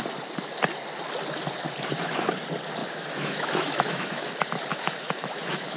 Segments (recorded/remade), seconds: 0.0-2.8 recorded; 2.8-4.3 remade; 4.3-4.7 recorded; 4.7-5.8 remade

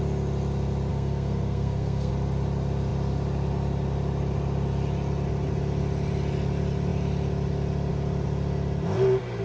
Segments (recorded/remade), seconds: 0.0-0.9 recorded; 0.9-2.1 remade; 2.1-9.4 recorded

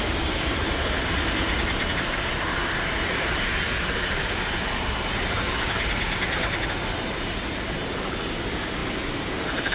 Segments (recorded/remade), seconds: 0.0-9.7 recorded